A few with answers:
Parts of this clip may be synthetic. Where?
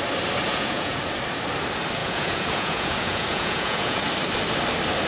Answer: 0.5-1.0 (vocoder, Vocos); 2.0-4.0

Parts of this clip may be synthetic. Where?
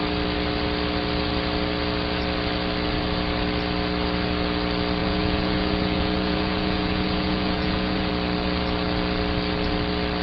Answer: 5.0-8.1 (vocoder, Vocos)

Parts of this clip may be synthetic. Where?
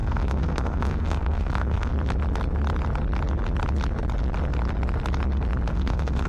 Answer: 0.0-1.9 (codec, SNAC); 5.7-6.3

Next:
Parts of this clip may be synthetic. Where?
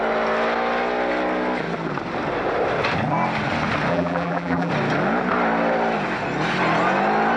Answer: 3.9-4.7 (vocoder, BigVGAN v2)